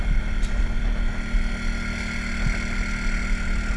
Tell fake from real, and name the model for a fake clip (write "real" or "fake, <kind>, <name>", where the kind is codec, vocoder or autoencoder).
real